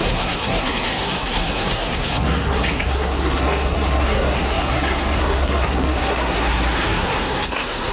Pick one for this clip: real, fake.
fake